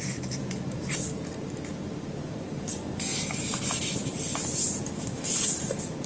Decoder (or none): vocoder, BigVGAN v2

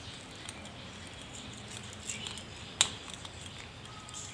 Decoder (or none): none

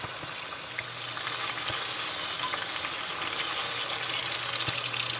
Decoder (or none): none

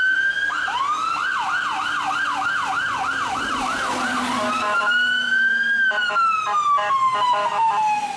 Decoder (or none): none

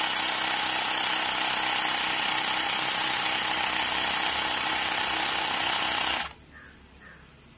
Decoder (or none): none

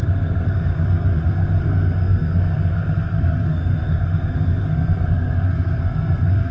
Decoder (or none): codec, SNAC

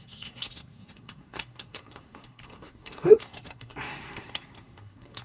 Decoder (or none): codec, SNAC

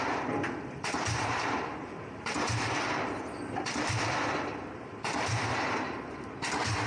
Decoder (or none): vocoder, BigVGAN v2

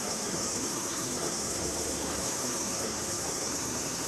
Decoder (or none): codec, SNAC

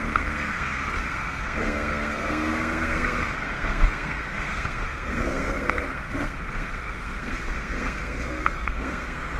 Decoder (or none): codec, SNAC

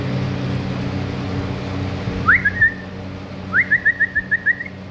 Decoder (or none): none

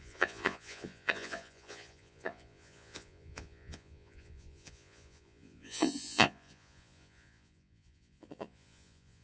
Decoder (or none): vocoder, Vocos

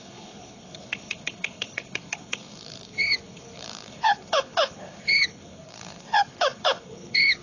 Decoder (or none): codec, HILCodec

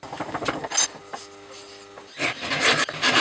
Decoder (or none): none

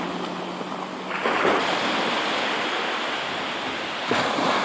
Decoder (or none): none